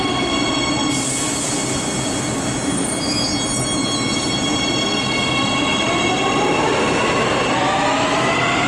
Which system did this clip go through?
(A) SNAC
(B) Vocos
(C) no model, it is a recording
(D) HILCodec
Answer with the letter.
C